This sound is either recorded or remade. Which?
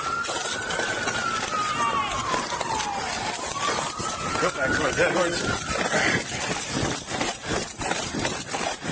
recorded